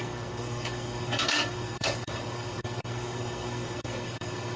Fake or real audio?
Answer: fake